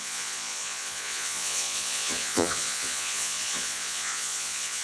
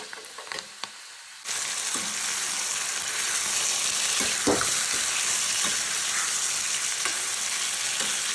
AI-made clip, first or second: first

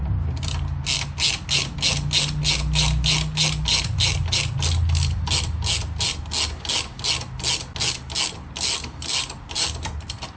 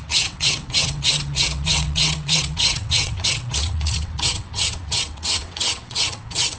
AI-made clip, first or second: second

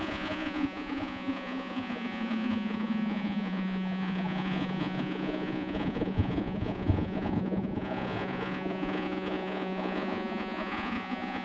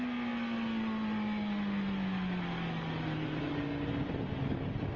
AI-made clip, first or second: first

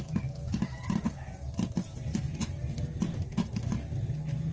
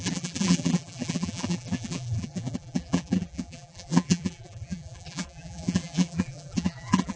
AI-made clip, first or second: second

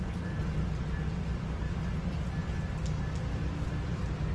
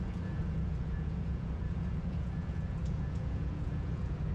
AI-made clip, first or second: second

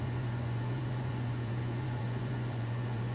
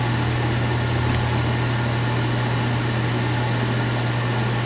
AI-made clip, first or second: first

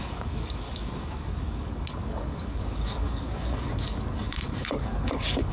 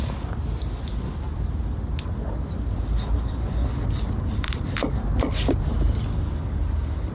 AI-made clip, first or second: first